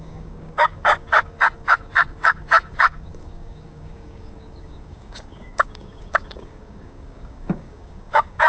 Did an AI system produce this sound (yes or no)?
yes